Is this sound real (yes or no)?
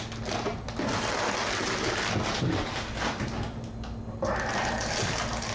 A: yes